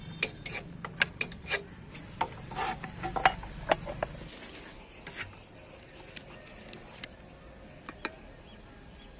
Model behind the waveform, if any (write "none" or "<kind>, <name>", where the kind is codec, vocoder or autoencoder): none